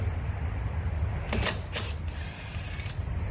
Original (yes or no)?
yes